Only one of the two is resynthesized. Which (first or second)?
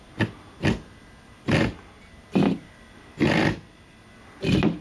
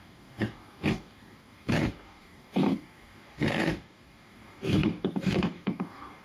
second